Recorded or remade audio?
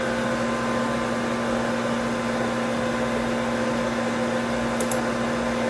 recorded